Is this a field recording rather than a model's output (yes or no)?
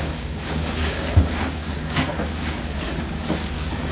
no